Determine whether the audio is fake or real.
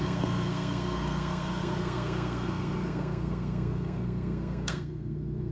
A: fake